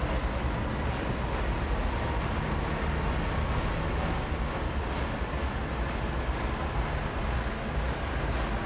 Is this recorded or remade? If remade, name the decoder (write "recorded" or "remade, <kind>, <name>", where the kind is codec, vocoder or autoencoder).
recorded